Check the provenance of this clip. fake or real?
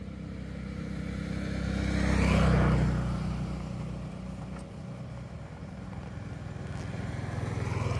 real